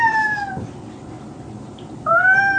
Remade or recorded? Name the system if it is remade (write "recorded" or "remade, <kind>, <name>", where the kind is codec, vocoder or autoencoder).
recorded